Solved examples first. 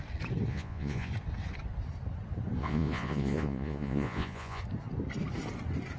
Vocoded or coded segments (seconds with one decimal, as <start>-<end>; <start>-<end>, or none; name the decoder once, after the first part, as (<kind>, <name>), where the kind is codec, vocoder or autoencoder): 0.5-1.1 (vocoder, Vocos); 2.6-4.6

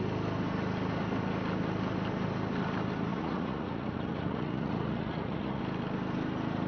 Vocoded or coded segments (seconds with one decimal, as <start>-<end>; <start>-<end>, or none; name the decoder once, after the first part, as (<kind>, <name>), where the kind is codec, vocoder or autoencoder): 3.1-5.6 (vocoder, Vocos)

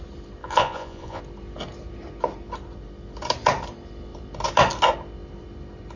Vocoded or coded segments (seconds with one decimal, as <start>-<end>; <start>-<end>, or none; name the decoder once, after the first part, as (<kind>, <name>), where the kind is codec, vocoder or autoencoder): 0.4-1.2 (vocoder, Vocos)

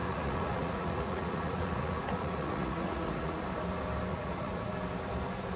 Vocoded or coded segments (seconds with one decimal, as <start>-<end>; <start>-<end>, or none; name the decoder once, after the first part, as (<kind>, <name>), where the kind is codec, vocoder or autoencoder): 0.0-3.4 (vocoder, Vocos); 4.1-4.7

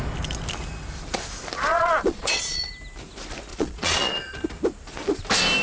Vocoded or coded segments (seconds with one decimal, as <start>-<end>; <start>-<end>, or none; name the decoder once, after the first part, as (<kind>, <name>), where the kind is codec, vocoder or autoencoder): 1.7-2.7 (vocoder, Vocos); 3.5-4.4